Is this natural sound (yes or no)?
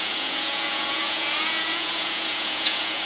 no